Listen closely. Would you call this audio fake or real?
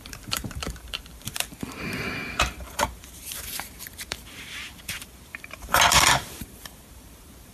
fake